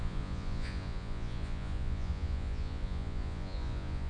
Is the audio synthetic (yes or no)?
yes